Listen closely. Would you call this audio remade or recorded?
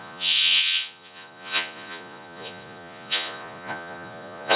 remade